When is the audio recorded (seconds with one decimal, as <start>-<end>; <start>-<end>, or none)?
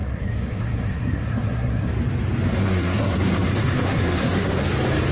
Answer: 1.9-2.6; 4.6-5.1